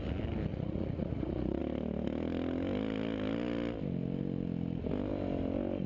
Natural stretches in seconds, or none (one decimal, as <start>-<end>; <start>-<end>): 0.0-0.5; 1.6-5.9

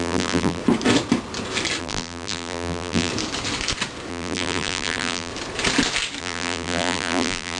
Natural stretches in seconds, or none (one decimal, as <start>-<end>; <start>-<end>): 0.6-1.8; 3.1-4.1; 5.3-6.2

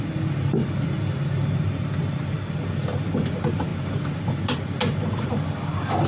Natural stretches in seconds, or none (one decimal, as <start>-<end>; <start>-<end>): 0.0-6.1

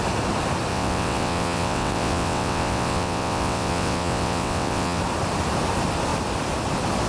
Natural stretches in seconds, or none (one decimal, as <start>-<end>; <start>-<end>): 0.0-0.7; 5.0-7.1